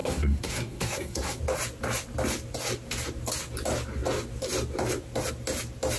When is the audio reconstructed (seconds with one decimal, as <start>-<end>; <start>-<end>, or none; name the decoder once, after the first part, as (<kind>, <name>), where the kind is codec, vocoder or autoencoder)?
0.0-1.4 (codec, SNAC)